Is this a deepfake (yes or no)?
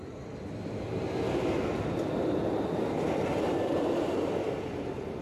no